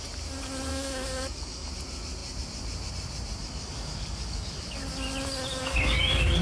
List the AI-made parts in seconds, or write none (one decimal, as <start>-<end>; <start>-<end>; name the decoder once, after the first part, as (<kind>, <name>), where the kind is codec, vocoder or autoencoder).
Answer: 0.7-1.7 (codec, DAC); 3.4-4.8; 5.6-6.4